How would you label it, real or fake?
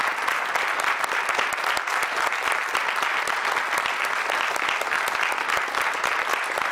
real